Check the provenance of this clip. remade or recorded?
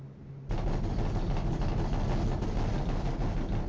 recorded